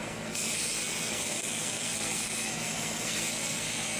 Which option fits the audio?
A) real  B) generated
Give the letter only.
B